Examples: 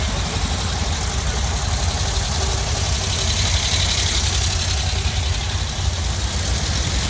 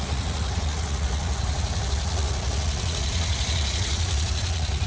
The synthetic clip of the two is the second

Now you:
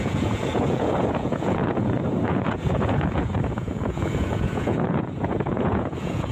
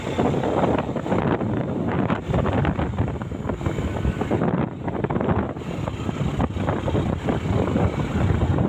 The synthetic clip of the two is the first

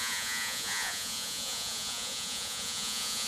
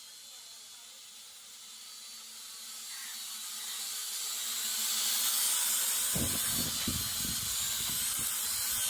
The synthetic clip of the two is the first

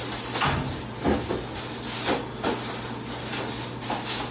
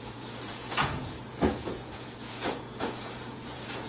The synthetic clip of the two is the second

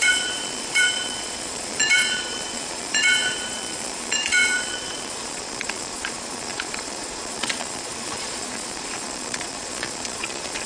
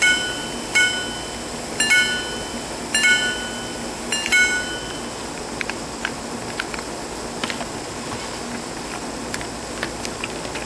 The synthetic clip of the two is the first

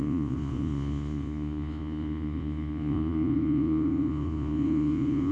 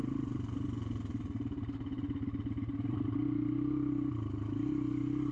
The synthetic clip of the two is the first